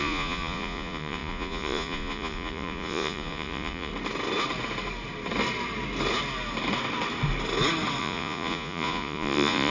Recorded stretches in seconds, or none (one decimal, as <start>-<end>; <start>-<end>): 3.9-8.0